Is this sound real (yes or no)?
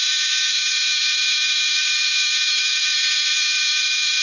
no